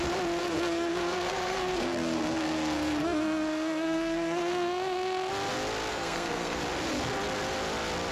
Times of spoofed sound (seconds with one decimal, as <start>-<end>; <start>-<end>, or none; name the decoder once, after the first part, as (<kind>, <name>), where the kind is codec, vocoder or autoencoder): 0.4-5.3 (codec, SNAC); 5.9-6.6